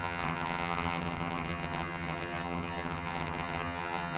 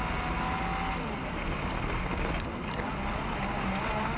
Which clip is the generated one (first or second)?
first